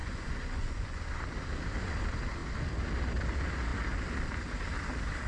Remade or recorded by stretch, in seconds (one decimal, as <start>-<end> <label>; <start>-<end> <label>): 0.0-1.0 remade; 1.0-5.3 recorded